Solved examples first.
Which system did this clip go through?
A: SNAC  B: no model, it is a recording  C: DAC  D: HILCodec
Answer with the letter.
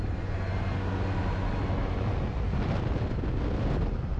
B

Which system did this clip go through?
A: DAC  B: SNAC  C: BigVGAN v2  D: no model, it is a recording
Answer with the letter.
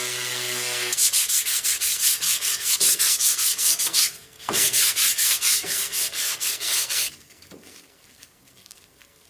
B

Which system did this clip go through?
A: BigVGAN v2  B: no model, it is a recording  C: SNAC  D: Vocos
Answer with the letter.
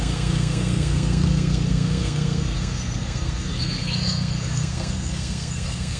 C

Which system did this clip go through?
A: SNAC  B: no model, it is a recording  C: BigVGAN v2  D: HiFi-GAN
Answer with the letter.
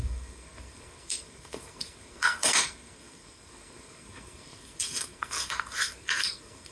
A